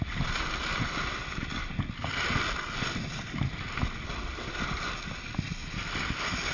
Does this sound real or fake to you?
real